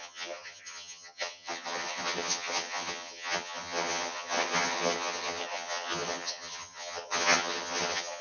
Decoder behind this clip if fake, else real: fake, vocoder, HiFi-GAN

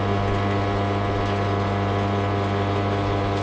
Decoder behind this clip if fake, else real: real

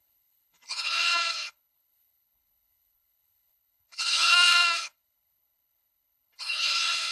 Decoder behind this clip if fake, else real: fake, codec, HILCodec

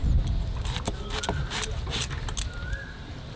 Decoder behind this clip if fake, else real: real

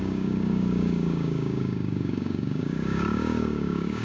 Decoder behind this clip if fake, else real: fake, codec, DAC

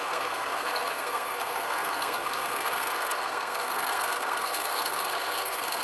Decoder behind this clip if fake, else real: fake, codec, SNAC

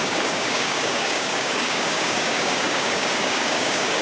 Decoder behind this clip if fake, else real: fake, codec, DAC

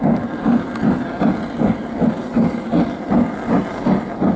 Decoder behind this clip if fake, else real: real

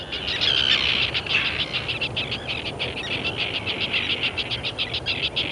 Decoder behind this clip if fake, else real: real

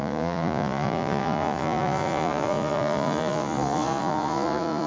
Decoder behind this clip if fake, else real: fake, vocoder, Vocos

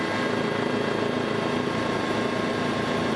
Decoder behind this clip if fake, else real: real